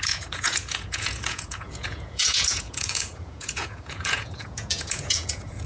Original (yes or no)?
no